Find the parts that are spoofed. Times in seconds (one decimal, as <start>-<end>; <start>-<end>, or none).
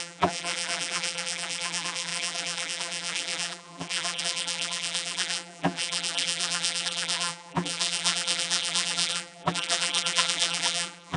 0.0-11.2